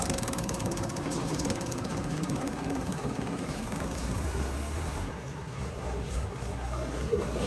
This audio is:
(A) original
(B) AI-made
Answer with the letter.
B